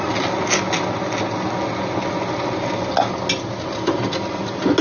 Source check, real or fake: real